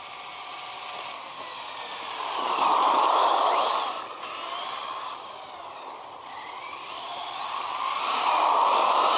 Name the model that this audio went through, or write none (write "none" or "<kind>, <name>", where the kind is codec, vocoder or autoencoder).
vocoder, BigVGAN v2